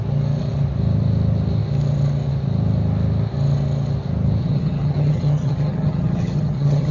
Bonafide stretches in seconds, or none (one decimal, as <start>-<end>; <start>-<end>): 0.0-4.4